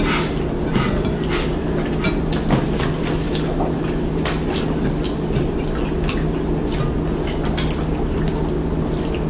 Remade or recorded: recorded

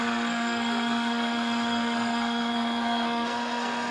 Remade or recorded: remade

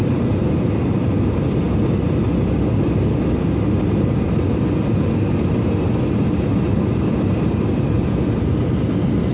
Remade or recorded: recorded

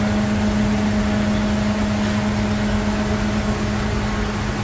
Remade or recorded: recorded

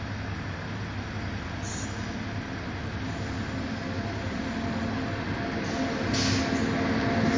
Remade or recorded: recorded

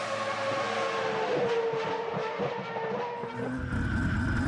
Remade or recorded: recorded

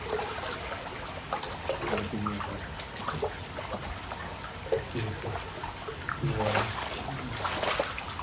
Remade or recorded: recorded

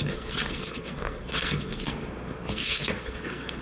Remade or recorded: remade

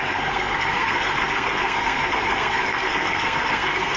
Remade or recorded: remade